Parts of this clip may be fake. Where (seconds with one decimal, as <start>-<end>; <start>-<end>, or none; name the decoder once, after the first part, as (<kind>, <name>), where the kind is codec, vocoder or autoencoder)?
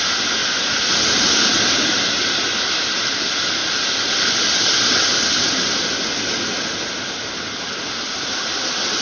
0.0-3.6 (vocoder, BigVGAN v2); 4.3-5.7; 7.4-9.0